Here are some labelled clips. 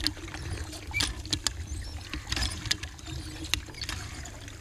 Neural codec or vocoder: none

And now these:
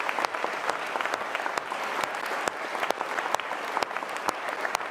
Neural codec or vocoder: none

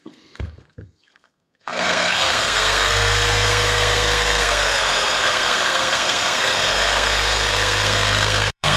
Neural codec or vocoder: codec, SNAC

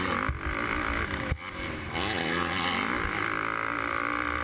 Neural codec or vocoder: none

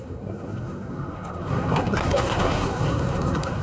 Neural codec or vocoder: codec, SNAC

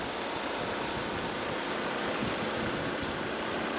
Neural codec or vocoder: none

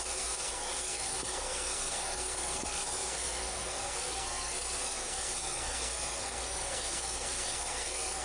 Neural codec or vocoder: codec, SNAC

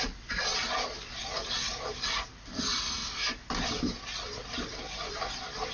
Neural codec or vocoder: none